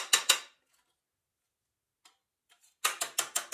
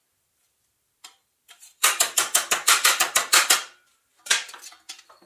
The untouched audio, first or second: first